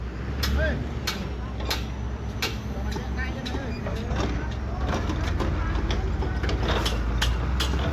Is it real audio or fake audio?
real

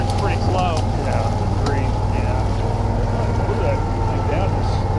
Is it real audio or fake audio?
real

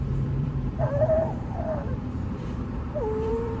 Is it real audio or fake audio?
fake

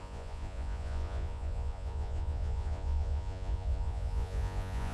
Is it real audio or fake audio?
fake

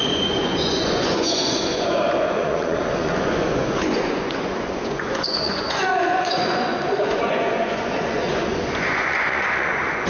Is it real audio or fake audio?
fake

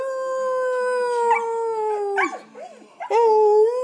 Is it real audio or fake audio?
real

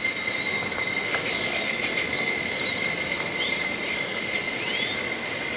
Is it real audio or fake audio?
real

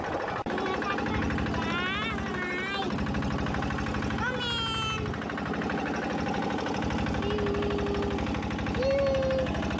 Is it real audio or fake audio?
real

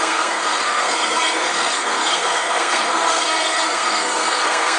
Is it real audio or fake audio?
fake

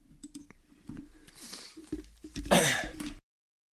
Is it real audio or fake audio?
fake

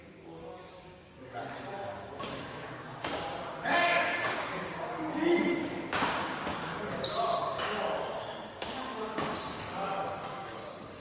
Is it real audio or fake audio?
fake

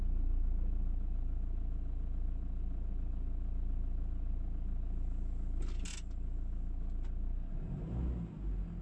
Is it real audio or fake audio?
real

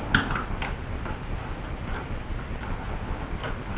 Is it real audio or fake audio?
real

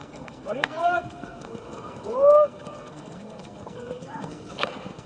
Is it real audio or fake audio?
fake